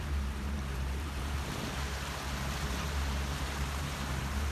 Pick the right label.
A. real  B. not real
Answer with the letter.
B